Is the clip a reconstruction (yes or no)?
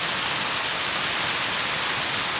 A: no